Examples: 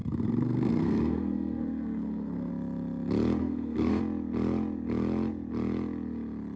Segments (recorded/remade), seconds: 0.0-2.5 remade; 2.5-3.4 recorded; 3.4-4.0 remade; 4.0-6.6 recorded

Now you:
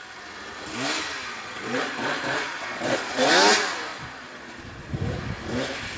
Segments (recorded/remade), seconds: 0.0-1.3 recorded; 1.3-3.3 remade; 3.3-3.9 recorded; 3.9-4.9 remade; 4.9-6.0 recorded